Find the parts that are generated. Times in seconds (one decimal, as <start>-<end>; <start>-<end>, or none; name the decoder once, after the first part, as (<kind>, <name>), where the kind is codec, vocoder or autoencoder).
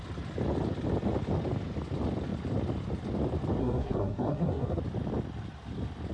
3.6-4.8 (codec, SNAC)